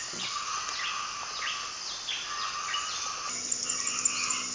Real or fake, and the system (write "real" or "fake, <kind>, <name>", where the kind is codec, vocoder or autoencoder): real